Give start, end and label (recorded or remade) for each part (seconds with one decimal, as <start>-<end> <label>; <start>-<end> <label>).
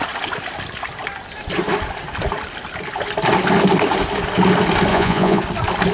0.0-4.9 recorded; 4.9-5.4 remade; 5.4-5.9 recorded